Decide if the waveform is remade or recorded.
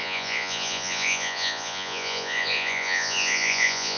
remade